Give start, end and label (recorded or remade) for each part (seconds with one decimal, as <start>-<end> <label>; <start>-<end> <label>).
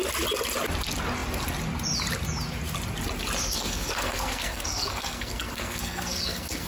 0.0-3.4 recorded; 3.4-6.7 remade